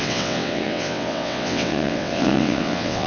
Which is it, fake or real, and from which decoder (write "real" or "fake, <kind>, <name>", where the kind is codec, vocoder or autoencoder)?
fake, vocoder, WaveNeXt